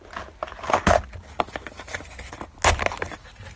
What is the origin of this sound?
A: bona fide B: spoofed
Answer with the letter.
A